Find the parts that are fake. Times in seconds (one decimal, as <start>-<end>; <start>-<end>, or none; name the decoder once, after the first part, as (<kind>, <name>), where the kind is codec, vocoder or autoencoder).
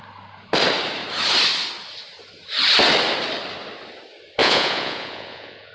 4.4-5.7 (vocoder, Vocos)